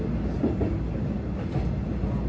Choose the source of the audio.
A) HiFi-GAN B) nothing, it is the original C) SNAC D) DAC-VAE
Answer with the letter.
B